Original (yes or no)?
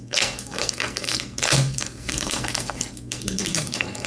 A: no